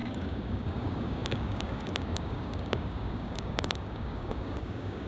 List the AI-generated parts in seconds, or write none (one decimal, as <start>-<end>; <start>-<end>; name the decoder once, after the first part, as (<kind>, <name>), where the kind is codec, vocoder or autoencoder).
0.0-5.1 (codec, DAC)